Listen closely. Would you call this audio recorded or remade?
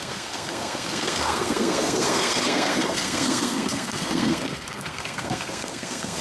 remade